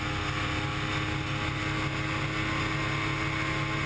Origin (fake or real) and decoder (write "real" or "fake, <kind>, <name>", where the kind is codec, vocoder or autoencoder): real